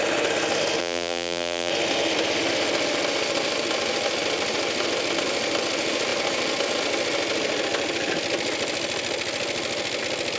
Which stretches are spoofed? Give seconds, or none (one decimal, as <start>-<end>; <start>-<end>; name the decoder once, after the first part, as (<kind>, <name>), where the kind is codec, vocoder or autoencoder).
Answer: 0.8-1.7 (vocoder, BigVGAN v2)